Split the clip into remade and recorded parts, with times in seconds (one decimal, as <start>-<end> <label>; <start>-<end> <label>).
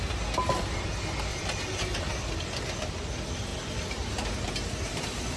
0.0-1.3 recorded; 1.3-2.0 remade; 2.0-5.4 recorded